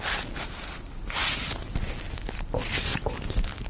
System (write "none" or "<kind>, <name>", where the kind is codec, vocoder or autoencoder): none